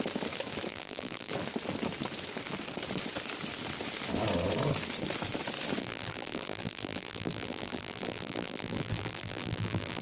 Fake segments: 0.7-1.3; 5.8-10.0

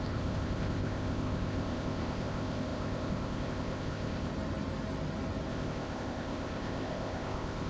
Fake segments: 0.0-4.3; 5.5-7.7

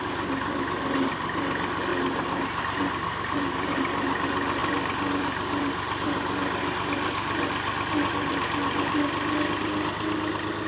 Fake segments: none

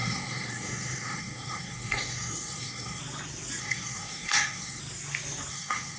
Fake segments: 0.0-3.0; 3.6-4.8; 5.5-6.0